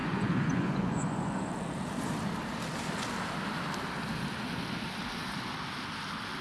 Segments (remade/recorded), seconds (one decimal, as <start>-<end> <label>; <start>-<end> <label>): 0.0-1.5 remade; 1.5-6.4 recorded